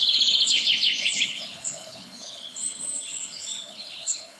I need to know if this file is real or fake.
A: fake